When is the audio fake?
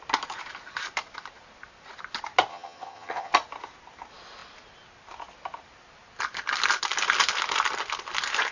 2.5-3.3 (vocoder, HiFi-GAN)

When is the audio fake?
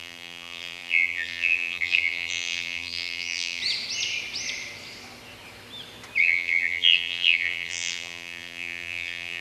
0.0-3.6 (vocoder, BigVGAN v2); 6.2-9.4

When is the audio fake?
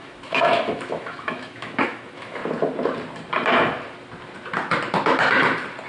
0.0-2.4 (autoencoder, DAC-VAE)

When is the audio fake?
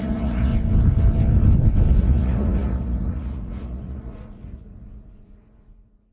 0.0-0.5 (vocoder, Vocos); 2.0-6.1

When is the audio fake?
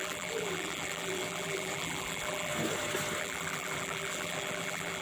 0.0-2.5 (vocoder, BigVGAN v2); 3.2-5.0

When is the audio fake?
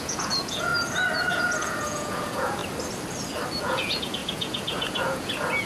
0.0-0.7 (vocoder, Vocos); 1.3-2.6; 3.6-5.7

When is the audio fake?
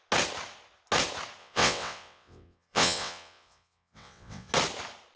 1.4-4.5 (vocoder, WaveNeXt)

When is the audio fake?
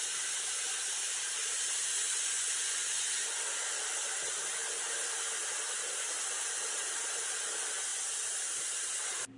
1.9-3.4 (vocoder, Vocos)